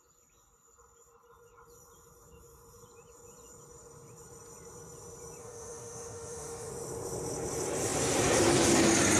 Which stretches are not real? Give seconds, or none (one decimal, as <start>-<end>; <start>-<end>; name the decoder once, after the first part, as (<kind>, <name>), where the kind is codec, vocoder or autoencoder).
5.4-6.7 (autoencoder, DAC-VAE)